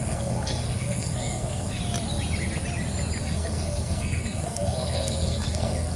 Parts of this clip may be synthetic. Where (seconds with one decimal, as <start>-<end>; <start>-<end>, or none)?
0.0-1.8; 3.2-6.0